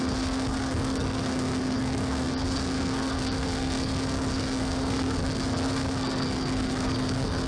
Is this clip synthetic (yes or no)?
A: yes